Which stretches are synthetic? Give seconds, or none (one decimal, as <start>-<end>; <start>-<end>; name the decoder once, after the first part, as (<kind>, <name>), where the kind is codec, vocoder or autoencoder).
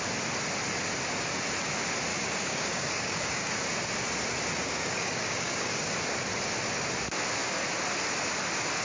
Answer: 2.1-3.6 (codec, DAC); 4.6-5.9